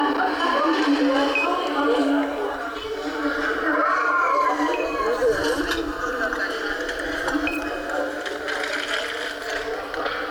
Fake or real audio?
real